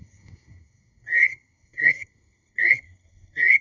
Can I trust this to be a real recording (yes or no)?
no